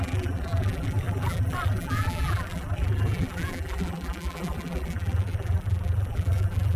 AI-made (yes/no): yes